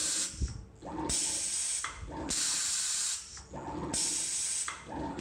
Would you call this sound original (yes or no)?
yes